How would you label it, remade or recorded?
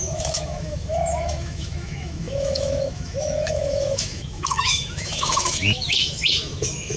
remade